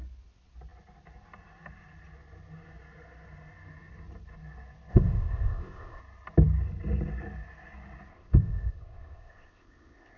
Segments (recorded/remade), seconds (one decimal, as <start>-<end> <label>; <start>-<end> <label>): 0.0-4.9 recorded; 4.9-6.0 remade; 6.0-8.1 recorded; 8.1-10.2 remade